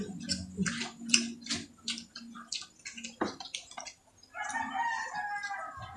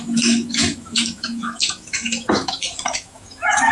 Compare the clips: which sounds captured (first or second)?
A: first